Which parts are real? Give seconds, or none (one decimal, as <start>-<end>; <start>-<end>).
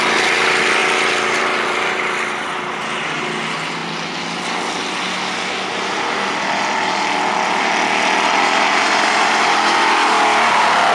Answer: 0.0-10.9